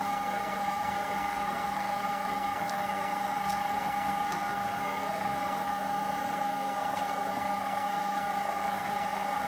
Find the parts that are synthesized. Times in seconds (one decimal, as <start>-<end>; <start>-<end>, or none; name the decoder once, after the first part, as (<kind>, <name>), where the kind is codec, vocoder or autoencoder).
0.0-9.5 (codec, SNAC)